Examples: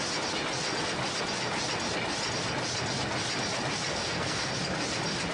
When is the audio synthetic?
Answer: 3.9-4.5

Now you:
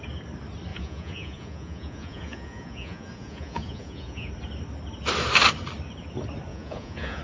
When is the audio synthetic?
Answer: 0.7-4.3; 6.5-7.2

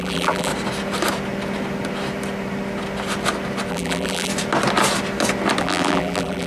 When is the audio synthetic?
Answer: 0.0-0.5; 3.7-4.3; 5.6-6.5

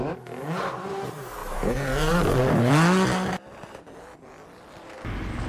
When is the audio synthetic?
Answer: 1.4-2.7

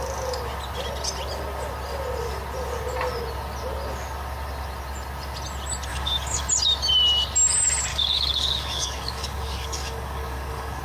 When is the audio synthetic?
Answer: 5.9-6.5; 7.9-10.8

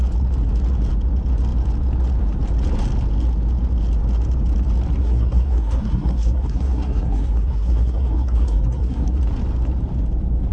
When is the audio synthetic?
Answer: 5.0-9.2